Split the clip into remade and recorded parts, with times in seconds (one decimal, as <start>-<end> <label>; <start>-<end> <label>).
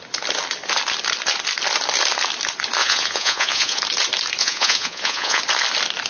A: 0.0-2.8 recorded; 2.8-3.8 remade; 3.8-4.4 recorded; 4.4-5.4 remade; 5.4-6.1 recorded